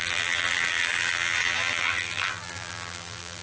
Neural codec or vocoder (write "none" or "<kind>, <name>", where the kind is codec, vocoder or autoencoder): vocoder, BigVGAN v2